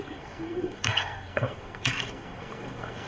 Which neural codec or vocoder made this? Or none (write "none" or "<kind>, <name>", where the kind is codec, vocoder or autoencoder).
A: codec, SNAC